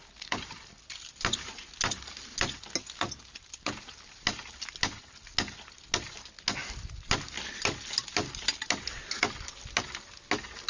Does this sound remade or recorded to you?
recorded